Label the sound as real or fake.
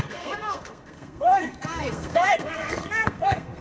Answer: fake